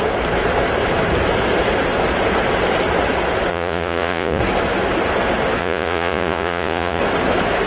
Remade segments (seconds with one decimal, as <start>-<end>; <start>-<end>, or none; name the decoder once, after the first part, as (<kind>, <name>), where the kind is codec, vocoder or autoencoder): 3.5-4.4 (vocoder, Vocos); 5.6-7.0